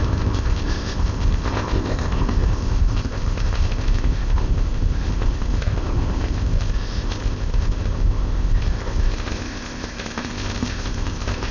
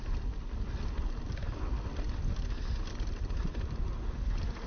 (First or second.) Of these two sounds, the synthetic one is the first